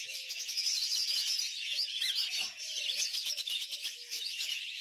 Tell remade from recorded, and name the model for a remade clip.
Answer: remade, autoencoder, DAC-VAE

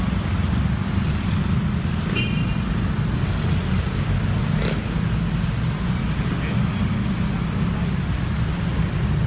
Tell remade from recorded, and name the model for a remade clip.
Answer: recorded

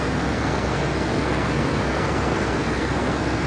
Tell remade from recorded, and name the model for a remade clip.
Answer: remade, codec, SNAC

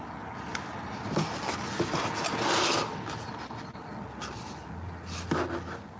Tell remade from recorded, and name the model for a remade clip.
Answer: recorded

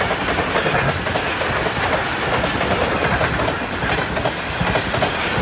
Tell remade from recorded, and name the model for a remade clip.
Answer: recorded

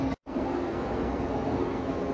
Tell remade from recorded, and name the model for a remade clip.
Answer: remade, codec, SNAC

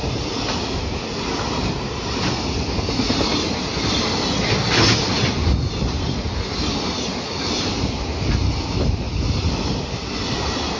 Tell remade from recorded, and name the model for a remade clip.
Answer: recorded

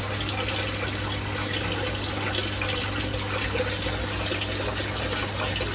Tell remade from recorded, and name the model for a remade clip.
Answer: recorded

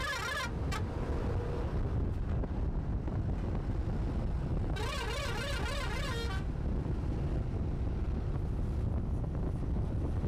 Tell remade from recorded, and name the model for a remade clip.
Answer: recorded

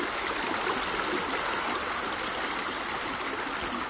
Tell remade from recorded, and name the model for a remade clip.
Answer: recorded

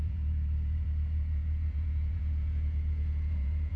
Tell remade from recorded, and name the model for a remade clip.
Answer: remade, vocoder, Vocos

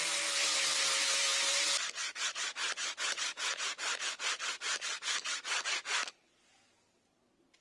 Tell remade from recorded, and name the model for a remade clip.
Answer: recorded